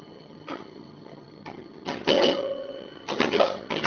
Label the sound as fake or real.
fake